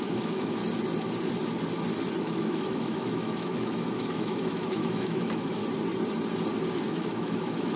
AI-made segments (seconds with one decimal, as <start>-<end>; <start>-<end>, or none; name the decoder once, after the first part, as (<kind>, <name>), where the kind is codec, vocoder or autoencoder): 0.0-0.6 (autoencoder, DAC-VAE); 2.2-5.6; 6.7-7.8